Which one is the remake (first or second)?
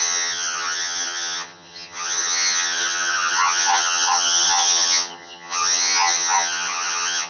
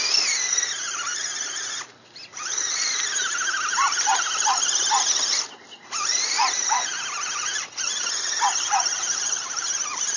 first